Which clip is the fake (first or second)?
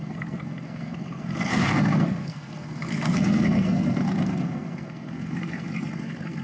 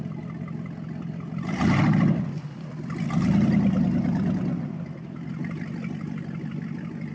first